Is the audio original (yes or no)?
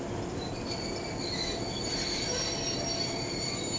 yes